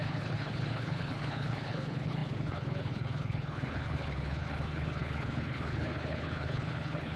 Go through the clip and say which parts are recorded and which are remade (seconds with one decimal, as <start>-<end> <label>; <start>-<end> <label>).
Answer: 0.0-7.2 remade